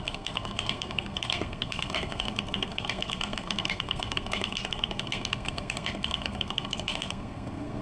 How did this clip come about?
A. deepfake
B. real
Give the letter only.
A